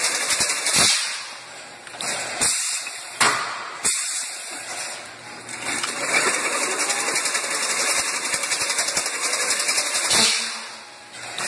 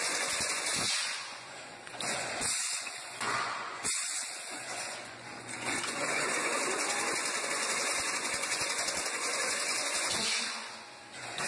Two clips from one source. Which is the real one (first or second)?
first